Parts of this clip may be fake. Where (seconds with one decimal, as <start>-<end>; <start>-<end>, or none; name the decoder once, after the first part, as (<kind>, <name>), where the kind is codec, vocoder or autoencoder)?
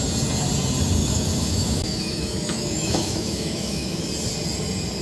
1.0-4.0 (autoencoder, DAC-VAE)